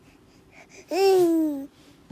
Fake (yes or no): no